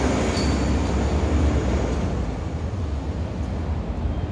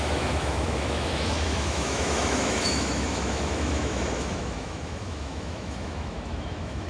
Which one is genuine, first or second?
first